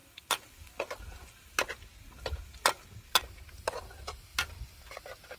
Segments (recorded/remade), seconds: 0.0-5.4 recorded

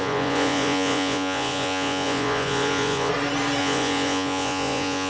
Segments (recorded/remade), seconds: 0.0-3.1 remade; 3.1-3.6 recorded; 3.6-5.1 remade